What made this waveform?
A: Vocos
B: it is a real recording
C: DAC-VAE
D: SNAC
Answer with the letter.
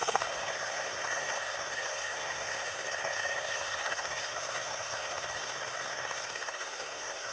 D